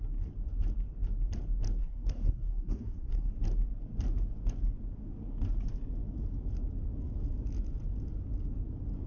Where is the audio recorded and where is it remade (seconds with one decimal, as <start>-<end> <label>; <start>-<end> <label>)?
0.0-1.8 recorded; 1.8-3.3 remade; 3.3-9.1 recorded